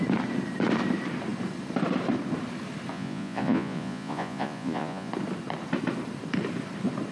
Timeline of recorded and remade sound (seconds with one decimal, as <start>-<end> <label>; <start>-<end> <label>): 0.0-2.9 recorded; 2.9-5.1 remade; 5.1-7.1 recorded